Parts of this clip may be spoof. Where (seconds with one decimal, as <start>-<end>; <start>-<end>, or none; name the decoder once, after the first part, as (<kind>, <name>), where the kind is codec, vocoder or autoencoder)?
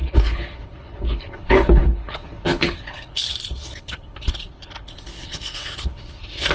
0.0-6.5 (codec, HILCodec)